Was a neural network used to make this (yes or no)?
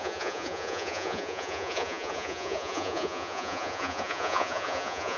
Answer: yes